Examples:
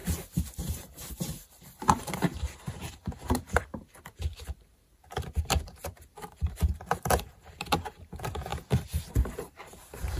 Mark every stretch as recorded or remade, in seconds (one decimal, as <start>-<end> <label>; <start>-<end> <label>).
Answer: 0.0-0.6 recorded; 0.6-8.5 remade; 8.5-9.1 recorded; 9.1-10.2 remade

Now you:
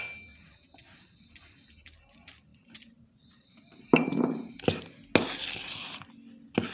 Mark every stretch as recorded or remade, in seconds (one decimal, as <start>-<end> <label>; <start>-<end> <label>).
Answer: 0.0-2.5 recorded; 2.5-4.6 remade; 4.6-6.7 recorded

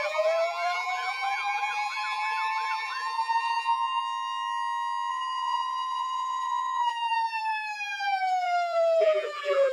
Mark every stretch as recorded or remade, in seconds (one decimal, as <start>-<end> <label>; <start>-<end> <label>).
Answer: 0.0-4.0 remade; 4.0-5.1 recorded; 5.1-9.7 remade

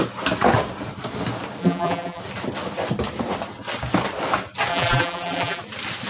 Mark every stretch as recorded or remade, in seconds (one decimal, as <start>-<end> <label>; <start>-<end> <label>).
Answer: 0.0-1.6 recorded; 1.6-2.2 remade; 2.2-4.7 recorded; 4.7-5.6 remade; 5.6-6.1 recorded